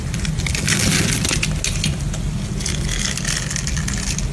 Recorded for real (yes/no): yes